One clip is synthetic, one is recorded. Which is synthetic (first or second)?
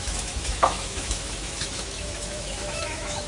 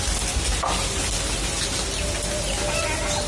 first